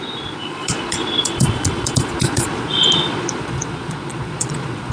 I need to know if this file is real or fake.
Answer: fake